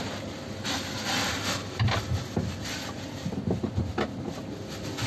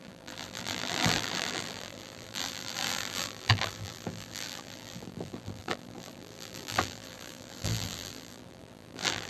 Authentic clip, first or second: first